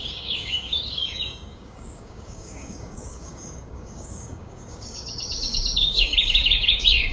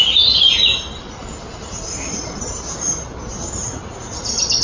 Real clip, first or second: second